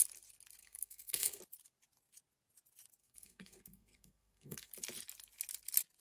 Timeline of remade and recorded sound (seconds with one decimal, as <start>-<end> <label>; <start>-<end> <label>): 0.0-0.6 recorded; 0.6-1.4 remade; 1.4-3.0 recorded; 3.0-4.7 remade; 4.7-6.0 recorded